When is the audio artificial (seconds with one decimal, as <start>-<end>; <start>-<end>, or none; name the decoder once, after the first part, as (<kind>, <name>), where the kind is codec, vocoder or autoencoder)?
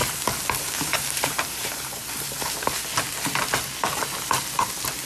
0.6-2.0 (vocoder, BigVGAN v2)